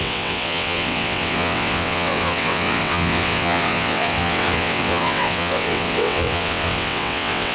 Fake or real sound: fake